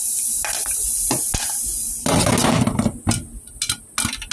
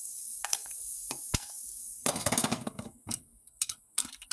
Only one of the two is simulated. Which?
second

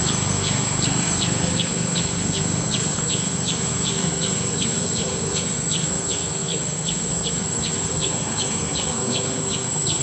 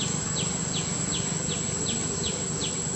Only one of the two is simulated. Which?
first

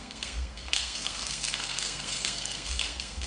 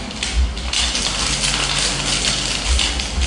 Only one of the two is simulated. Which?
first